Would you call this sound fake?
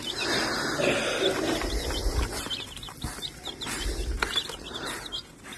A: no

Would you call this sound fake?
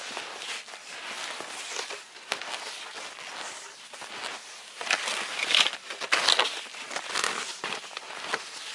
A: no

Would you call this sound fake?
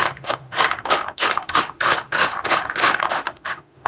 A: yes